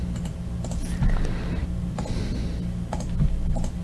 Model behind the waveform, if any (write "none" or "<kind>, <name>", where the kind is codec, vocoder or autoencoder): none